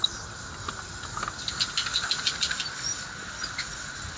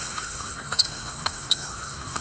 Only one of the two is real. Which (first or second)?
first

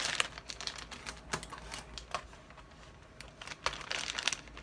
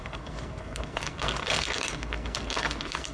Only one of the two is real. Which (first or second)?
first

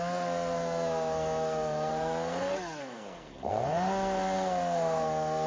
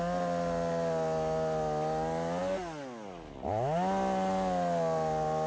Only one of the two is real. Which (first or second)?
second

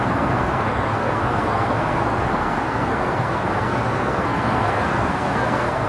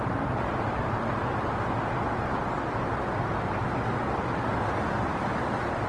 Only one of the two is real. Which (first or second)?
second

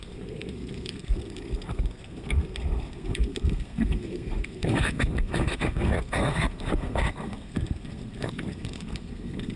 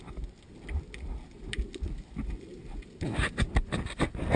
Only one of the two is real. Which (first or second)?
second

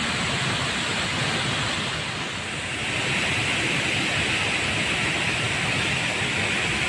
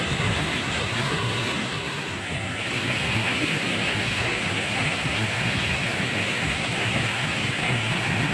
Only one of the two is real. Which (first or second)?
first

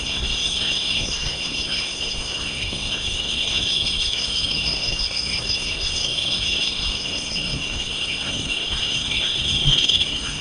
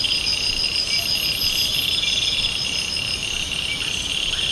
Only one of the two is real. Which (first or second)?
second